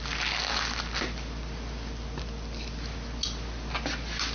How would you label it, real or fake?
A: real